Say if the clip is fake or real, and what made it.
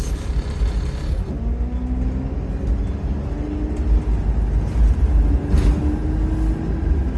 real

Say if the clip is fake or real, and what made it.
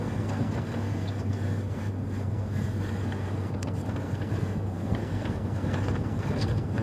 fake, codec, SNAC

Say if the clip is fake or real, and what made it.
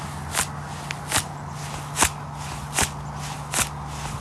real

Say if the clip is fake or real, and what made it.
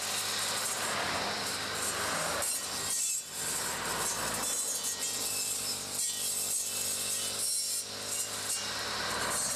real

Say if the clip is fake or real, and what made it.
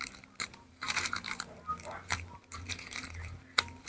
fake, vocoder, BigVGAN v2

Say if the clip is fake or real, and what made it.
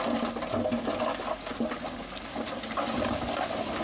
real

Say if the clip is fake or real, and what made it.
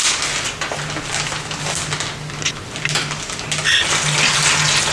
real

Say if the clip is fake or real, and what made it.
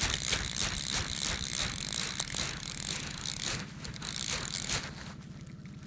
real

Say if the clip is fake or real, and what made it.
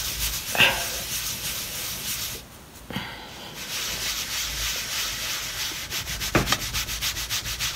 real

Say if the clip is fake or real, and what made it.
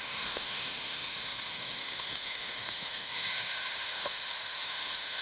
fake, autoencoder, DAC-VAE